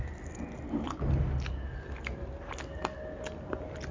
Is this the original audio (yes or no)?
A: yes